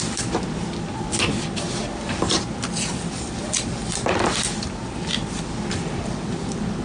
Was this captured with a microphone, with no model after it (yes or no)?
no